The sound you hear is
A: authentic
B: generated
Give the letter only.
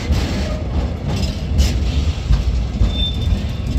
A